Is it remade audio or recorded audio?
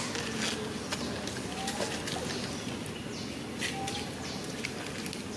recorded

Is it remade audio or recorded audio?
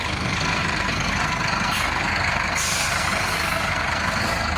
remade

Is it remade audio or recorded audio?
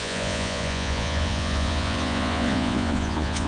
remade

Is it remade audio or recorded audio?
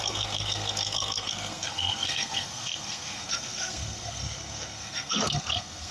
remade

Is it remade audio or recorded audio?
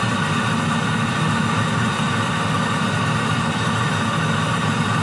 recorded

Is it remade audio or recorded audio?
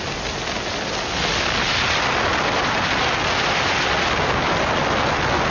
recorded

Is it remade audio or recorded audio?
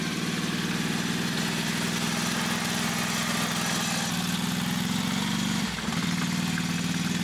recorded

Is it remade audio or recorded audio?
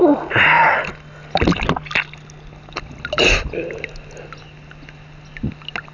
recorded